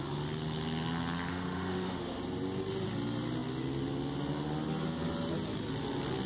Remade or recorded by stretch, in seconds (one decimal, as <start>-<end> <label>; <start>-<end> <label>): 0.0-1.3 recorded; 1.3-2.2 remade; 2.2-6.3 recorded